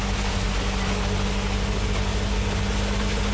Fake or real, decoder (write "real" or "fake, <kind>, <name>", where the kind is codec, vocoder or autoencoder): real